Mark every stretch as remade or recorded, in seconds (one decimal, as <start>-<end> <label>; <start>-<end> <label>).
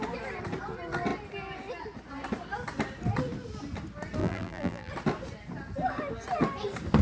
0.0-4.2 recorded; 4.2-4.9 remade; 4.9-7.0 recorded